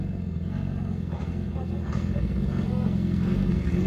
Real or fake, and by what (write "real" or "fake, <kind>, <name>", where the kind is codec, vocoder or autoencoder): fake, codec, SNAC